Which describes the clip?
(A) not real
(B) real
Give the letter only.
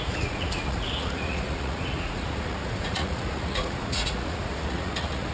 A